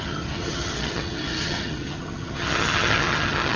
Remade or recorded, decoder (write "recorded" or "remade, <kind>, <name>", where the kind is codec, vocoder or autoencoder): remade, vocoder, HiFi-GAN